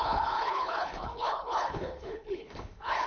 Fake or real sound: fake